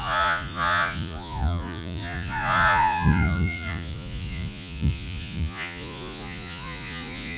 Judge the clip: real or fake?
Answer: fake